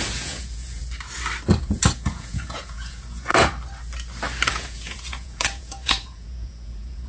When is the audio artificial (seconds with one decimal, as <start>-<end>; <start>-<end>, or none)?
0.0-0.8; 1.6-3.3; 4.5-7.1